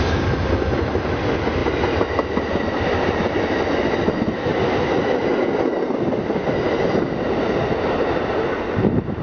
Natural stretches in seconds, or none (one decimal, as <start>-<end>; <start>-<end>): 0.0-9.2